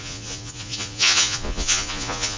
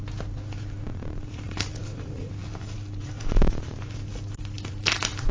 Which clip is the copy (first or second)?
first